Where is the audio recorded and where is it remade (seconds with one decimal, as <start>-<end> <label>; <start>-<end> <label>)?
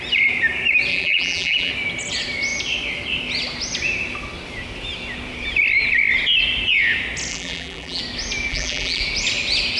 0.0-0.9 recorded; 0.9-1.7 remade; 1.7-7.3 recorded; 7.3-8.0 remade; 8.0-8.5 recorded; 8.5-9.0 remade; 9.0-9.8 recorded